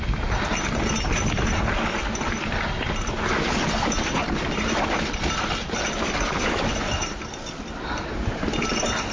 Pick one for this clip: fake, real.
real